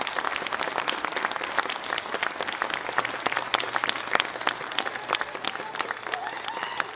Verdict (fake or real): real